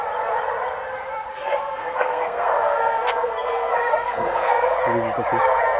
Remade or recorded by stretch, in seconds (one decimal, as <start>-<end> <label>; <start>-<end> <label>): 0.0-1.3 recorded; 1.3-4.8 remade; 4.8-5.8 recorded